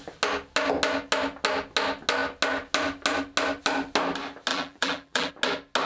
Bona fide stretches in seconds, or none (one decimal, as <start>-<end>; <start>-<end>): 0.0-4.5; 5.3-5.9